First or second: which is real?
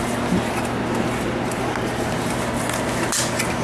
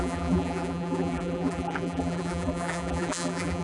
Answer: first